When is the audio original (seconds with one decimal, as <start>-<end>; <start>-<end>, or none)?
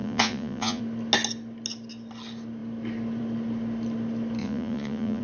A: 0.8-4.4